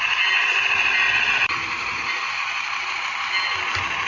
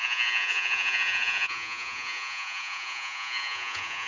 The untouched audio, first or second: first